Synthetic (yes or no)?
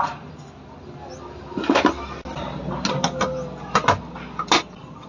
no